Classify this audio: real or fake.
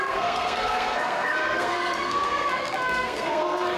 fake